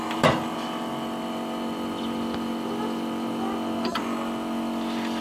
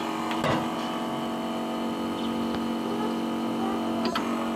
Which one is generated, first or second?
first